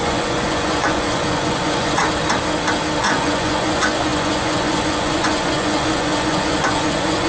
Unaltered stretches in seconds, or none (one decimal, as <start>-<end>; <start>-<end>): 2.0-3.0